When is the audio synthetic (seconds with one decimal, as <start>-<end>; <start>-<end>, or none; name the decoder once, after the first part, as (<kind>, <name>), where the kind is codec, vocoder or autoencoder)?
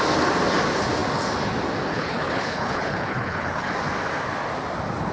1.9-3.7 (codec, HILCodec)